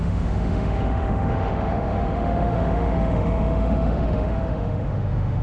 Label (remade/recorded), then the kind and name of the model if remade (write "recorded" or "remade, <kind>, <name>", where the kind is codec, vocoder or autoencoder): remade, autoencoder, DAC-VAE